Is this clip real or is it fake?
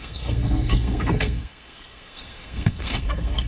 fake